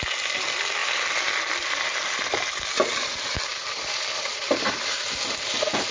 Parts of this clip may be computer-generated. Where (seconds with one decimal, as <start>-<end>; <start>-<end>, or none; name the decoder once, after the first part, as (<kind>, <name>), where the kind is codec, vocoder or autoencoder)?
none

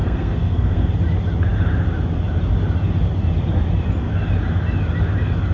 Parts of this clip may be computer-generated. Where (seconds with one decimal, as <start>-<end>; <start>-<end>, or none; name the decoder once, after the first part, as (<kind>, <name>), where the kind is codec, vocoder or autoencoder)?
0.0-0.9 (codec, SNAC)